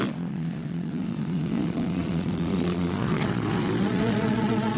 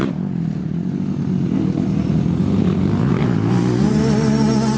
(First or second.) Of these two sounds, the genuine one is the second